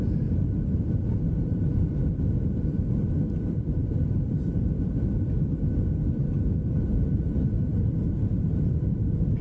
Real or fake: fake